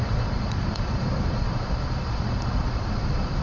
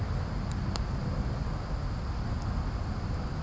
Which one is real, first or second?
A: second